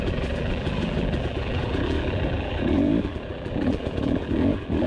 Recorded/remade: remade